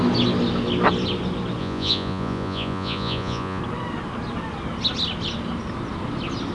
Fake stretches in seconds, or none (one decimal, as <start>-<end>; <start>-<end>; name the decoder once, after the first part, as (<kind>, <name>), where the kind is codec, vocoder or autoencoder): 1.6-3.6 (vocoder, Vocos)